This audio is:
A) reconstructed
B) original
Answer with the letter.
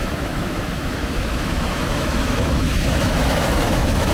A